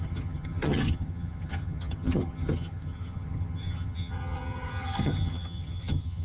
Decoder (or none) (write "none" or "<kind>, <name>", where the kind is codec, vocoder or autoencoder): vocoder, HiFi-GAN